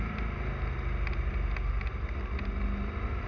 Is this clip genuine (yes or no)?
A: yes